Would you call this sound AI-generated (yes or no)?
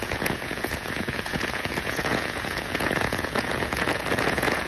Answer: yes